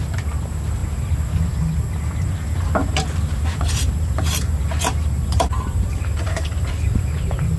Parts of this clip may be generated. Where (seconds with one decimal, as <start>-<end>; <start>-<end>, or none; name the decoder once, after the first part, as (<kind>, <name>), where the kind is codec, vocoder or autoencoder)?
0.8-1.6 (vocoder, BigVGAN v2); 2.8-7.6